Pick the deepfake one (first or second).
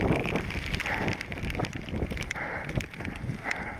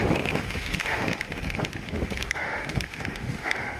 second